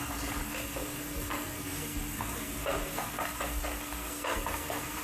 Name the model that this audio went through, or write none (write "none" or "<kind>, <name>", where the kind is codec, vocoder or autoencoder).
codec, SNAC